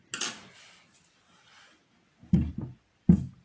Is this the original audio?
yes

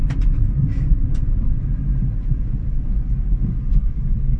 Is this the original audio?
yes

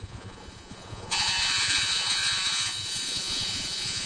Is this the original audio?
no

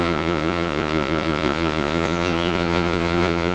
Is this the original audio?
no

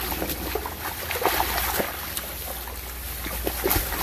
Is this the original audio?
yes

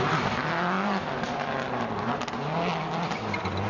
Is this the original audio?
yes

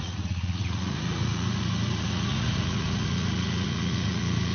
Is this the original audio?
no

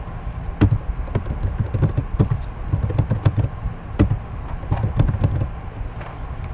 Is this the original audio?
yes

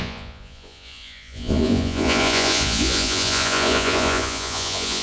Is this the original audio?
no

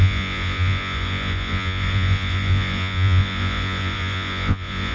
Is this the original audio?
no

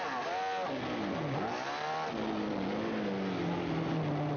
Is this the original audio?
yes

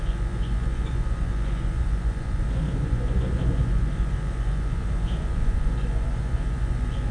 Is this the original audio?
no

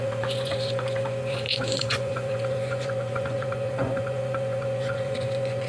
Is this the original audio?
no